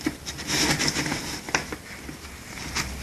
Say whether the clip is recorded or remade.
recorded